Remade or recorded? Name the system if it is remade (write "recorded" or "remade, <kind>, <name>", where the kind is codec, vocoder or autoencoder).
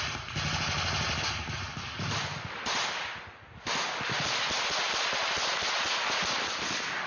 recorded